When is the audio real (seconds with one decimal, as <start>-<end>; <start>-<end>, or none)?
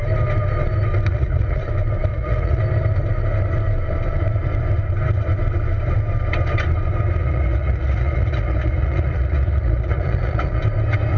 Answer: 0.0-1.1; 1.7-2.1; 2.6-7.2; 10.6-11.2